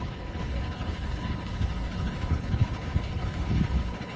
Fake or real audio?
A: fake